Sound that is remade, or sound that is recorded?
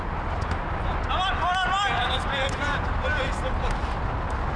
recorded